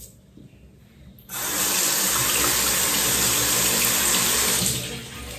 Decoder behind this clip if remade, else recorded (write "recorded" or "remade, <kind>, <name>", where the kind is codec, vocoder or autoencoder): recorded